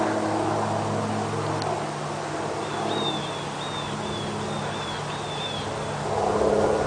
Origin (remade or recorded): recorded